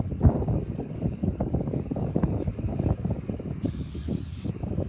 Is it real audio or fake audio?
fake